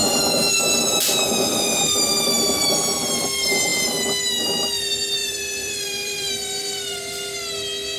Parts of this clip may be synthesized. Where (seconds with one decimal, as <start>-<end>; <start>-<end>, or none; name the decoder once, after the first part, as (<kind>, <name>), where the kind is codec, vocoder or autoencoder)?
0.0-2.7 (vocoder, BigVGAN v2); 5.2-6.3